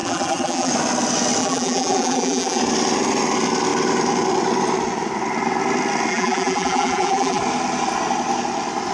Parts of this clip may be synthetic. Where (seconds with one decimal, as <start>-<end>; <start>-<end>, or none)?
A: 0.0-0.7; 1.4-2.6; 6.1-7.4